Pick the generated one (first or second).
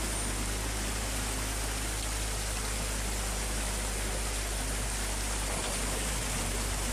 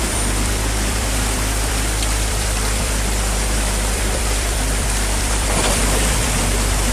second